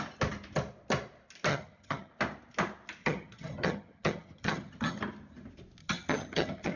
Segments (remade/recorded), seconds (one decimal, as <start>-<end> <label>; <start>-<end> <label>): 0.0-1.5 recorded; 1.5-2.1 remade; 2.1-3.0 recorded; 3.0-5.0 remade; 5.0-5.8 recorded; 5.8-6.8 remade